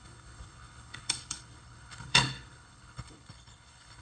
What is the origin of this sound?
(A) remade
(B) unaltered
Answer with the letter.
A